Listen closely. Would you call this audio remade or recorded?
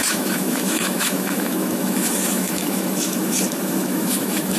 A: remade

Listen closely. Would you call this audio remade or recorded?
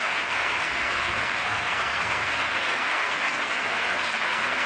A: remade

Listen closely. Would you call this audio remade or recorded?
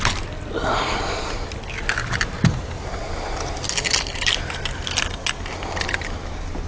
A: recorded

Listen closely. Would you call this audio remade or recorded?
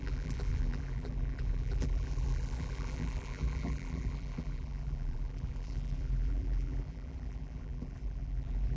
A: remade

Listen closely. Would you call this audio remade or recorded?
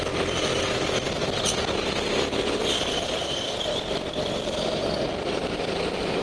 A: recorded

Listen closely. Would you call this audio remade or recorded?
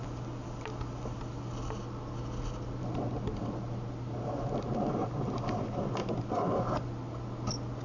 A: recorded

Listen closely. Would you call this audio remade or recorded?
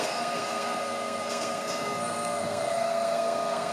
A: remade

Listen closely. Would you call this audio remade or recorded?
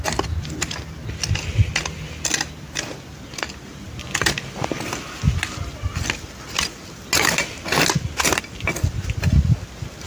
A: recorded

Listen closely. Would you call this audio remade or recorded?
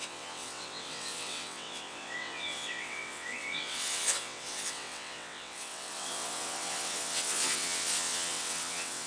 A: remade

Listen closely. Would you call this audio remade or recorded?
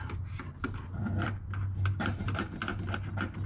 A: recorded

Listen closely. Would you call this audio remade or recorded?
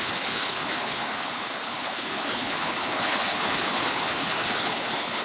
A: remade